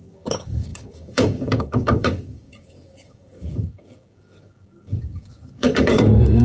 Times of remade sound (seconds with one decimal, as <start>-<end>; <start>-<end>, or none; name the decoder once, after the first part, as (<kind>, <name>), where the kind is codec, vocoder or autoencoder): 0.0-6.4 (codec, DAC)